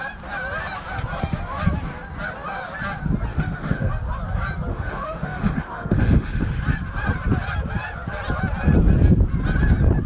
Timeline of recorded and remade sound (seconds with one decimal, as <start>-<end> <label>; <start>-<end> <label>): 0.0-3.3 recorded; 3.3-3.9 remade; 3.9-4.7 recorded; 4.7-6.6 remade; 6.6-10.1 recorded